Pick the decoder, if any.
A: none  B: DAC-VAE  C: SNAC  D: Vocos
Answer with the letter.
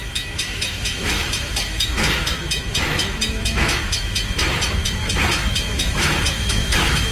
B